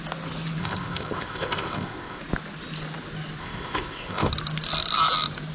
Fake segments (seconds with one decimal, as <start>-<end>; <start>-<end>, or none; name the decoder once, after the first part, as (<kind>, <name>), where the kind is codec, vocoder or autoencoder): 0.6-2.2 (codec, ZipCodec); 3.4-4.3